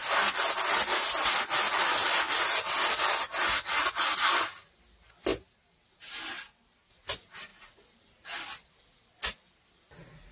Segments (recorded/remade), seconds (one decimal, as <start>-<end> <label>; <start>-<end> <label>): 0.0-10.3 recorded